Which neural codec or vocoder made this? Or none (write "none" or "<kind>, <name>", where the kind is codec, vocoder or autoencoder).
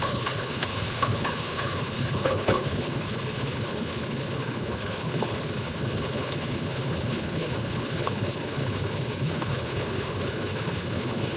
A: codec, HILCodec